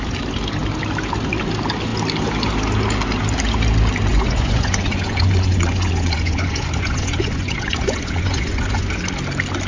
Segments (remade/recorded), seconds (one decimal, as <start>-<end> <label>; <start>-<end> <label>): 0.0-4.1 recorded; 4.1-9.0 remade; 9.0-9.7 recorded

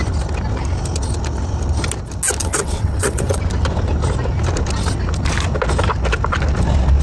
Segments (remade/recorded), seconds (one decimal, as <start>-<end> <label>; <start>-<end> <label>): 0.0-2.4 recorded; 2.4-3.4 remade; 3.4-7.0 recorded

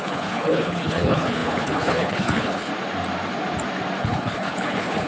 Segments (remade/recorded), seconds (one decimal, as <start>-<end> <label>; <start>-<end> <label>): 0.0-2.7 remade; 2.7-4.0 recorded; 4.0-5.1 remade

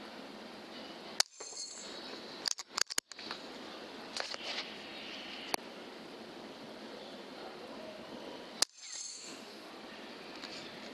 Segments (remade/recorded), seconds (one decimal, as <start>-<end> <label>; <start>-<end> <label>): 0.0-9.1 recorded; 9.1-9.7 remade; 9.7-10.9 recorded